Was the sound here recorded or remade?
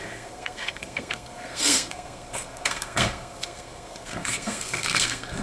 remade